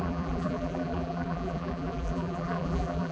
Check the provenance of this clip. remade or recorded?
remade